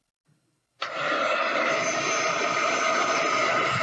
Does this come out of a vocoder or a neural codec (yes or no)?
no